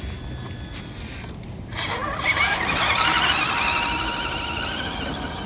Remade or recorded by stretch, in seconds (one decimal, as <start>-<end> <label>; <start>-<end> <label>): 0.0-5.5 recorded